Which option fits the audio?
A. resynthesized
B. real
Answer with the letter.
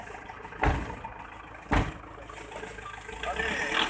B